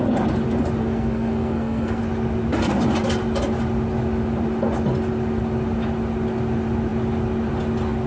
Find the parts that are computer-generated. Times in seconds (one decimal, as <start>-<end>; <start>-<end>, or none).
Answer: 0.8-2.0